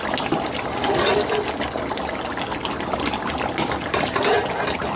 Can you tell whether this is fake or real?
real